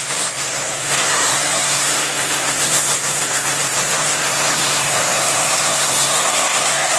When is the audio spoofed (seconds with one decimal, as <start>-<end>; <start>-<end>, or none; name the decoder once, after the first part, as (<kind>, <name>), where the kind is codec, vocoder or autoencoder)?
0.0-7.0 (codec, SNAC)